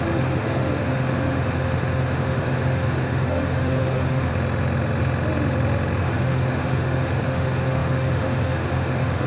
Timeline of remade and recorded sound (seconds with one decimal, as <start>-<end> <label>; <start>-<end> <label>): 0.0-4.3 remade; 4.3-6.0 recorded; 6.0-9.3 remade